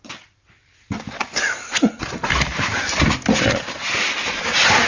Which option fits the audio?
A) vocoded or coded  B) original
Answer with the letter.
B